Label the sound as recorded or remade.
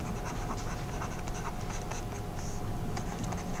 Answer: recorded